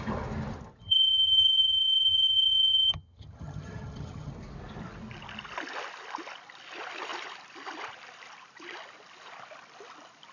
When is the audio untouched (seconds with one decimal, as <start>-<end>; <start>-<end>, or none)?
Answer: 0.0-0.8; 4.3-10.3